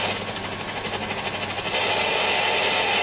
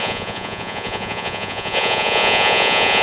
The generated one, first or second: second